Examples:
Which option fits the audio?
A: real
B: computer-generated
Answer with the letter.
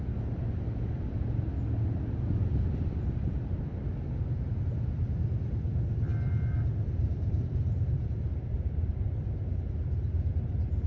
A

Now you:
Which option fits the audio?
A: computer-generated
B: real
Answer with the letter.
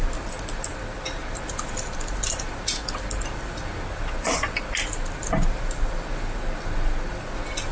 B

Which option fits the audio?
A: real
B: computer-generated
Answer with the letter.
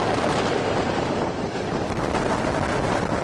A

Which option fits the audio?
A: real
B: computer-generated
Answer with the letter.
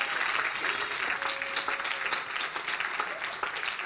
A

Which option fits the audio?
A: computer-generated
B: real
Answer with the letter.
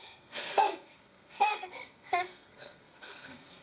A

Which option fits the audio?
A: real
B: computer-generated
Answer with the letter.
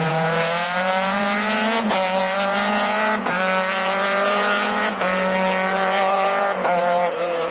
B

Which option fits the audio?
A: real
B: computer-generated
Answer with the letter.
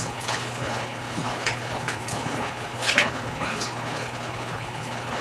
B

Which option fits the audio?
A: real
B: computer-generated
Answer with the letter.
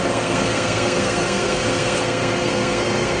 B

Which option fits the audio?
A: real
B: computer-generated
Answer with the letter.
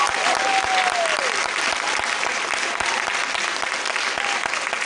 A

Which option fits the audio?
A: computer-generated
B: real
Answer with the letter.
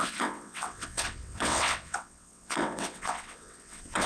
A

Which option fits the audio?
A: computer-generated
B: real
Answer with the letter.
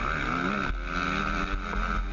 B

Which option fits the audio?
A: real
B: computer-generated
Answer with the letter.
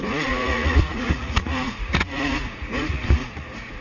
B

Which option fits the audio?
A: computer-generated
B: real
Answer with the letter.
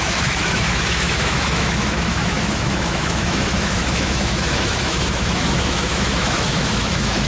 A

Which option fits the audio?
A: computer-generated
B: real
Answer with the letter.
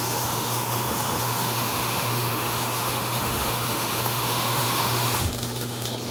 A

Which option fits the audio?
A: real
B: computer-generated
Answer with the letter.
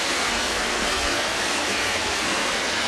B